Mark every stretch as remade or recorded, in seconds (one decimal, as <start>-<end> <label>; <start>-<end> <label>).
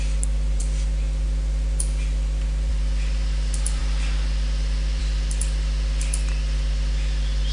0.0-7.5 recorded